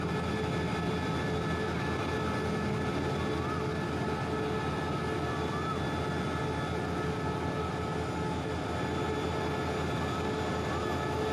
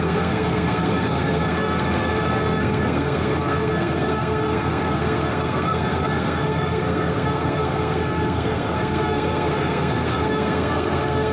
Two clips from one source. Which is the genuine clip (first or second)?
first